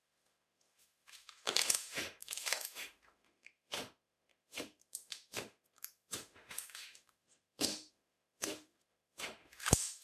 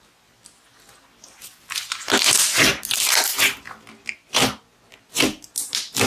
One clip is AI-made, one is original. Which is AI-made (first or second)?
first